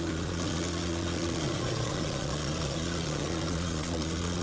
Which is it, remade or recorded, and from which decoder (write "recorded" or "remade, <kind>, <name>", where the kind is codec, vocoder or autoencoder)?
remade, vocoder, Vocos